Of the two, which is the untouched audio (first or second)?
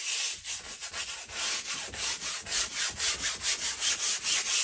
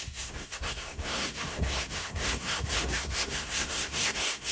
first